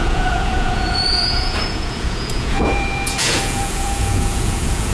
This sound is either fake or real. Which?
fake